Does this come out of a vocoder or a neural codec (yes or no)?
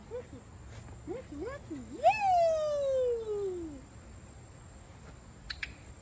no